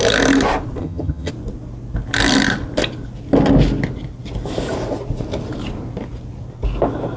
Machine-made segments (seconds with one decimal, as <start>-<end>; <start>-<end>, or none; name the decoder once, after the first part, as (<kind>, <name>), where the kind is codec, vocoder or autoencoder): 0.8-1.3 (vocoder, HiFi-GAN)